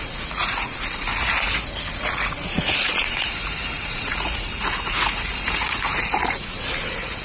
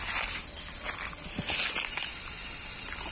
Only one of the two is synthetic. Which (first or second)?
first